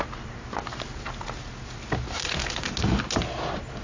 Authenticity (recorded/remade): recorded